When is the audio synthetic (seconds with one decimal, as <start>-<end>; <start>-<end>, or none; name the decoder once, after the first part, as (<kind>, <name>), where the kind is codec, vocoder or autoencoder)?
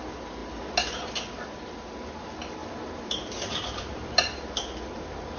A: 2.6-4.5 (vocoder, BigVGAN v2)